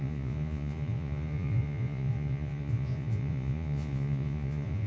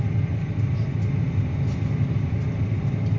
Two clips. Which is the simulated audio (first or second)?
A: first